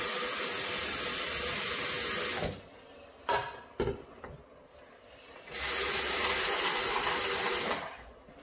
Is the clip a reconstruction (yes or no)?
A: no